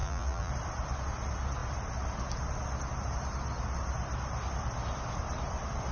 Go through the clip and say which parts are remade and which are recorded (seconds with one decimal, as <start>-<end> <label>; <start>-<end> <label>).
0.0-0.5 remade; 0.5-5.9 recorded